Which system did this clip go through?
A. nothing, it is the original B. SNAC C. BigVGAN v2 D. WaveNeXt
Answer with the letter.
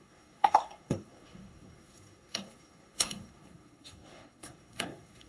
B